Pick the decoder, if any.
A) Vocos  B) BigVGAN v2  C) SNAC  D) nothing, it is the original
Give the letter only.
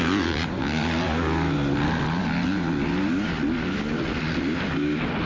D